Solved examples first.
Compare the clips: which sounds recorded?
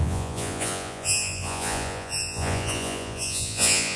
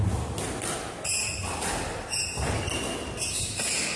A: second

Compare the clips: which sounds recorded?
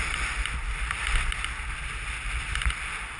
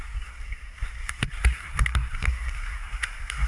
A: first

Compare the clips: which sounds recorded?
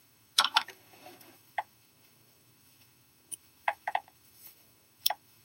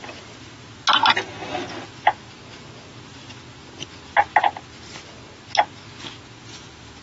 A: second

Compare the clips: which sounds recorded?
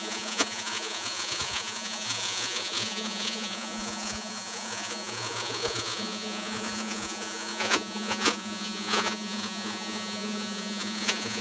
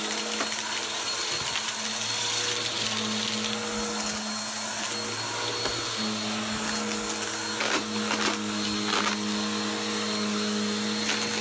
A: second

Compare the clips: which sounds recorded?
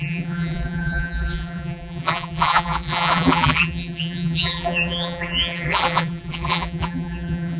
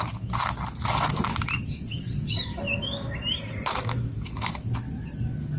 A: second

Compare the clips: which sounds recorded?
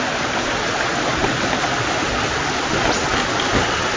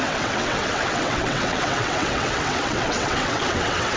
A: first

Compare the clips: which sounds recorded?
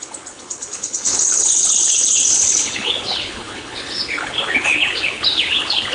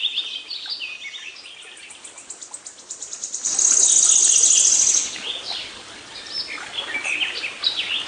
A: second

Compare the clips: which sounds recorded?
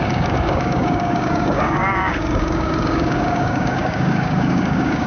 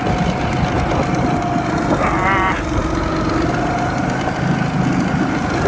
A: second